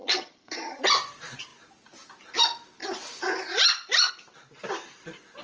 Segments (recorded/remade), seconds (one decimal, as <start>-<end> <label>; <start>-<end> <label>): 0.0-0.8 remade; 0.8-5.4 recorded